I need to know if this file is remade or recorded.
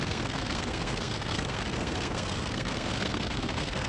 remade